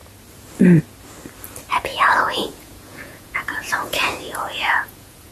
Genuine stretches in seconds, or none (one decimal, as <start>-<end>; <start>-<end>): 0.0-1.9